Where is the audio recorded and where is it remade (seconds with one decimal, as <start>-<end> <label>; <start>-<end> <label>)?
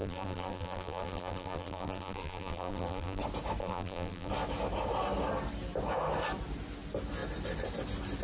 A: 0.0-3.2 remade; 3.2-3.6 recorded; 3.6-4.3 remade; 4.3-8.2 recorded